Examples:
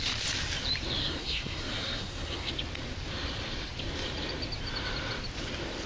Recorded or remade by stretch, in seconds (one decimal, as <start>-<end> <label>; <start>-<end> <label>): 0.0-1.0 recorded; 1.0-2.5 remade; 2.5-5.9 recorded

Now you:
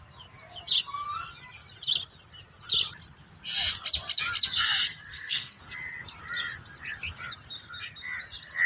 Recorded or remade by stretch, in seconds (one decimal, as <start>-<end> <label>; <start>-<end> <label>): 0.0-5.1 recorded; 5.1-5.6 remade; 5.6-8.7 recorded

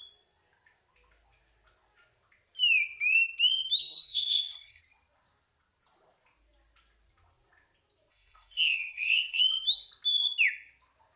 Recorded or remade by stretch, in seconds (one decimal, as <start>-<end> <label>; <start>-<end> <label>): 0.0-3.8 recorded; 3.8-4.8 remade; 4.8-8.1 recorded; 8.1-9.4 remade; 9.4-11.2 recorded

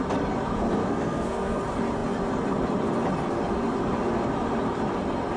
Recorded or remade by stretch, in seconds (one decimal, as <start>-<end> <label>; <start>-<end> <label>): 0.0-0.8 recorded; 0.8-1.6 remade; 1.6-5.4 recorded

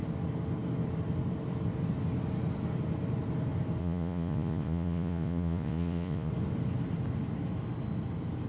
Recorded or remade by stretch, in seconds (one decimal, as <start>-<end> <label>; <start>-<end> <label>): 0.0-3.8 recorded; 3.8-6.3 remade; 6.3-8.5 recorded

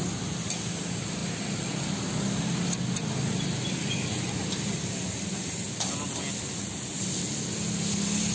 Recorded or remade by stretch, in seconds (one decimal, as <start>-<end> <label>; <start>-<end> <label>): 0.0-8.3 recorded

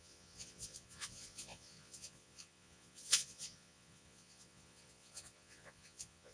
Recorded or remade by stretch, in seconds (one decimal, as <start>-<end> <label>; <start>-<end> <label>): 0.0-6.3 remade